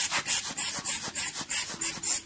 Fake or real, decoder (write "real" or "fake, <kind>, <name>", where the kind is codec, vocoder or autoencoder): real